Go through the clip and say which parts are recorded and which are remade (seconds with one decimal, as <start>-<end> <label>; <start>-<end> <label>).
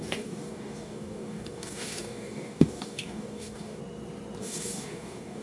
0.0-3.8 remade; 3.8-4.4 recorded; 4.4-5.4 remade